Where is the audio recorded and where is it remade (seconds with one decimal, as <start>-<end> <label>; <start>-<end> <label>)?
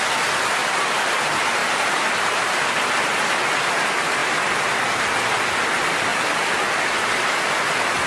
0.0-0.6 recorded; 0.6-1.1 remade; 1.1-1.6 recorded; 1.6-2.6 remade; 2.6-8.1 recorded